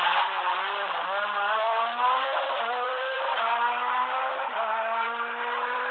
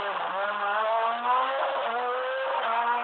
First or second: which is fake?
first